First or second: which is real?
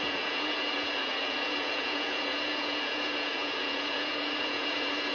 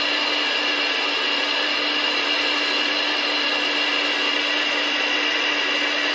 second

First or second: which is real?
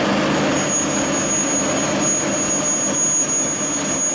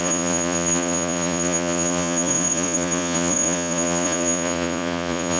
first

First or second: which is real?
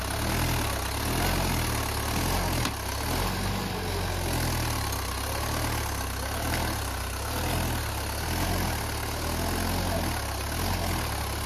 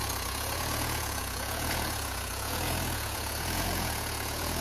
first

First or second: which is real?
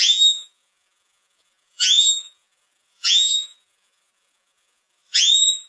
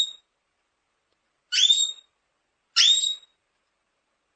second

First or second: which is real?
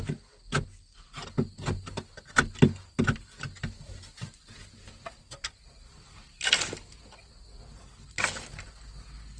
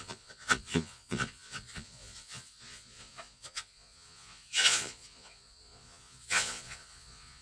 first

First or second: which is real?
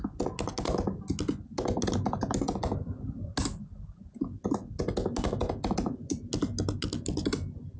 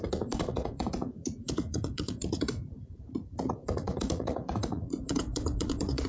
first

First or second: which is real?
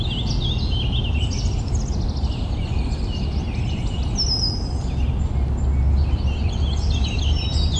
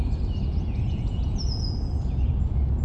first